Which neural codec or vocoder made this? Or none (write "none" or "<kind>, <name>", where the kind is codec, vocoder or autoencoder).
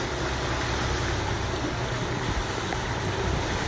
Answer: none